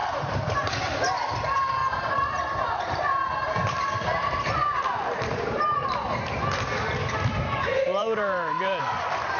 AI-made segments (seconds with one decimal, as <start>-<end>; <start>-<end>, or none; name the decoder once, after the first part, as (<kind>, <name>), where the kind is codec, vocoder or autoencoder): 0.0-0.7 (vocoder, BigVGAN v2); 1.8-6.3; 8.0-8.8